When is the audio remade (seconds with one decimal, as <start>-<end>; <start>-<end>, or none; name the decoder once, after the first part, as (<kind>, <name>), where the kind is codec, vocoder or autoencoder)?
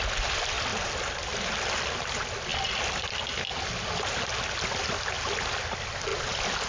none